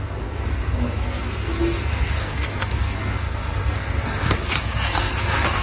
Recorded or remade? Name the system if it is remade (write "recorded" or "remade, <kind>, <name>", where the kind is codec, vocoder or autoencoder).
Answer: remade, codec, SNAC